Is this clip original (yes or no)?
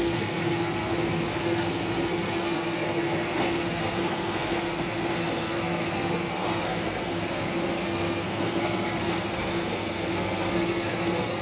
no